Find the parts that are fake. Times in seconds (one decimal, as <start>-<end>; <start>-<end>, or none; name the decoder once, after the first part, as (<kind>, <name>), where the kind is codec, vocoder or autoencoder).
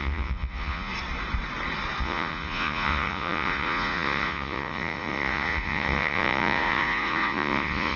0.0-0.9 (vocoder, Vocos); 2.0-8.0